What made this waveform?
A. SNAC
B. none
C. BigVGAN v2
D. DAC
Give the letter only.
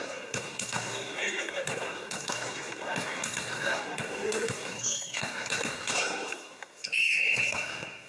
A